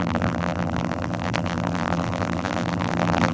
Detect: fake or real fake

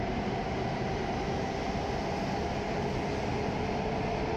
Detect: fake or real real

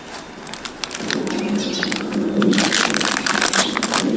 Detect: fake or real real